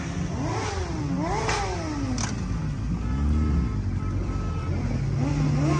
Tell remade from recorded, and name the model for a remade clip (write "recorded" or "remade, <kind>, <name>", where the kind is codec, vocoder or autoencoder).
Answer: recorded